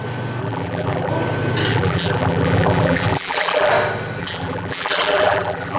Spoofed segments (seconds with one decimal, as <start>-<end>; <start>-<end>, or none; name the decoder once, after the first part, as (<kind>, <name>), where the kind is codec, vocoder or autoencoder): 0.4-1.1 (vocoder, BigVGAN v2); 1.7-3.7; 4.2-5.8